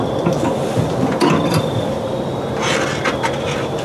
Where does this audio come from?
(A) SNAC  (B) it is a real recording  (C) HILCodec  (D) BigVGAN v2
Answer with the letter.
B